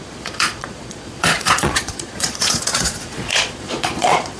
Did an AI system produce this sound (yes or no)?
yes